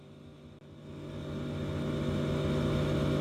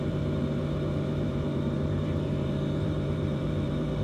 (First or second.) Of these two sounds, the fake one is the second